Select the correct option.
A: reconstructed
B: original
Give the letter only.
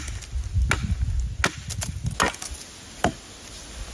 B